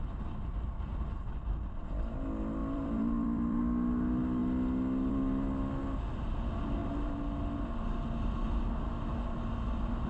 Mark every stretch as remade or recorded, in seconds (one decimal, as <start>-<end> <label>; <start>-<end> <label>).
0.0-2.6 recorded; 2.6-3.6 remade; 3.6-10.1 recorded